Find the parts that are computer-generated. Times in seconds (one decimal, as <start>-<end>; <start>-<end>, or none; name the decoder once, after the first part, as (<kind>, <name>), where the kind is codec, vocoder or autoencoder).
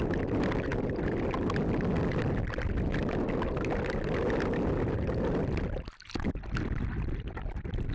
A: none